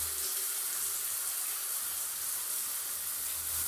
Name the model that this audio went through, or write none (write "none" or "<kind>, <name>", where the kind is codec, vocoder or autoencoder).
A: none